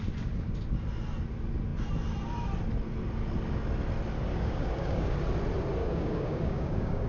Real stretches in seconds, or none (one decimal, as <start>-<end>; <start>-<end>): 0.0-4.3; 5.2-5.8